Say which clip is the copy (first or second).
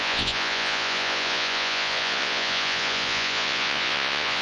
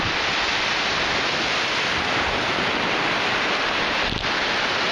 first